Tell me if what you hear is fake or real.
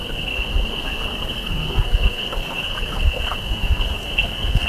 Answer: fake